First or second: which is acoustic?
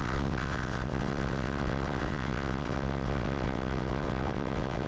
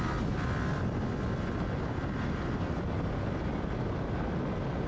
second